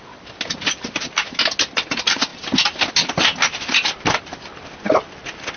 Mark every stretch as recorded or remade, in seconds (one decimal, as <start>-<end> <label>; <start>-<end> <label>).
0.0-5.6 recorded